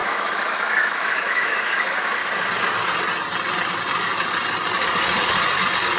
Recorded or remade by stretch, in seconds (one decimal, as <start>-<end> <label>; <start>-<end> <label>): 0.0-2.2 remade; 2.2-6.0 recorded